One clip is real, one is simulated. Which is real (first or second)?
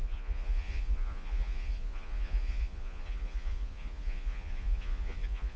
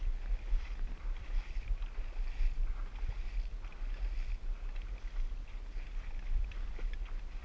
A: second